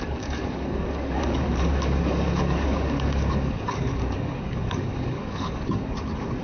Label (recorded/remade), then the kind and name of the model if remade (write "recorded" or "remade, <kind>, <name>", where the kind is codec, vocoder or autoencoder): remade, codec, DAC